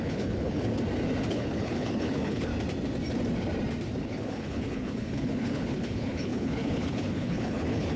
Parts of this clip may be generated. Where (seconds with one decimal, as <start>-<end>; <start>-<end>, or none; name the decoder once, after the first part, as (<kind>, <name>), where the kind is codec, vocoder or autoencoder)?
0.0-0.7 (codec, HILCodec); 1.3-2.5; 4.0-8.0